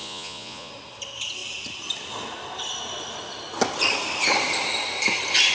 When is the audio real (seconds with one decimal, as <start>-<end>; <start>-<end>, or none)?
0.7-5.5